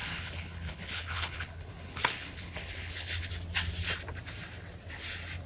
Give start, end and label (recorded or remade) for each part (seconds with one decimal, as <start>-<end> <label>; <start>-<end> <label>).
0.0-3.3 remade; 3.3-5.5 recorded